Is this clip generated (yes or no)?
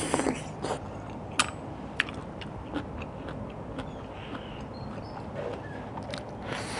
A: no